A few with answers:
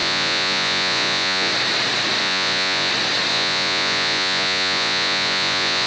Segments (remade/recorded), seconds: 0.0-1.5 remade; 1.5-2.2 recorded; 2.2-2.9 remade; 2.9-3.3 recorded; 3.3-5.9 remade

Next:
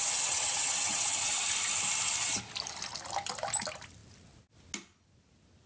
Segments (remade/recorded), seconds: 0.0-1.3 remade; 1.3-5.7 recorded

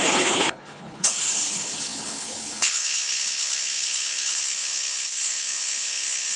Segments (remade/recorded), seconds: 0.0-6.4 remade